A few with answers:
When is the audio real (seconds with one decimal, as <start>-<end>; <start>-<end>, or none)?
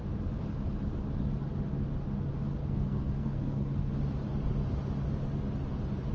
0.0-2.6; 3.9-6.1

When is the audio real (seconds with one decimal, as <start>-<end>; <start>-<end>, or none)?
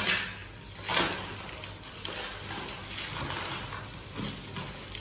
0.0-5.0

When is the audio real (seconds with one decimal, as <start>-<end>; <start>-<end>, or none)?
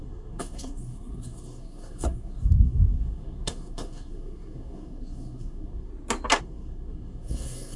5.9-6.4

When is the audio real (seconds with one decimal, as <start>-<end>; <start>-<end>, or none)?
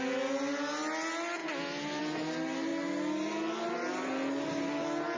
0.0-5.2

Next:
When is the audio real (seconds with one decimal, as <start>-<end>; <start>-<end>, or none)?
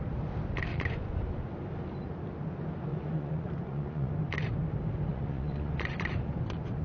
0.0-0.7; 1.2-2.9; 4.1-5.1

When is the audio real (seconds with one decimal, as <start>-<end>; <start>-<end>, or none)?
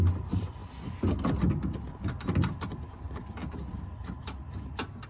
0.0-3.4; 4.2-5.1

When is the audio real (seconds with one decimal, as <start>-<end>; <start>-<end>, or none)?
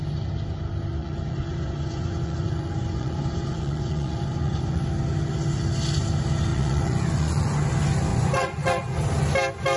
0.0-1.0; 4.8-6.5; 7.6-8.1; 9.0-9.8